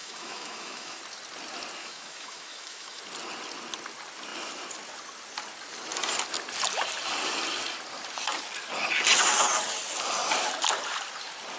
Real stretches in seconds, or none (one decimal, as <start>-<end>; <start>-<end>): 1.0-1.8; 3.0-11.6